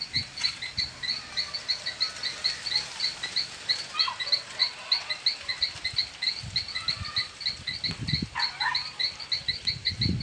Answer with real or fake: real